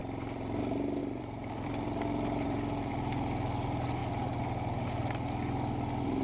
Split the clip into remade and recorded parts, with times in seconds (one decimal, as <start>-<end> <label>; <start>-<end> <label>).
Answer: 0.0-0.6 remade; 0.6-1.0 recorded; 1.0-2.9 remade; 2.9-6.2 recorded